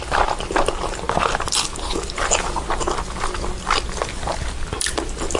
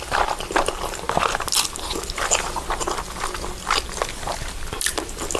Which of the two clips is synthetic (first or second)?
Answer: second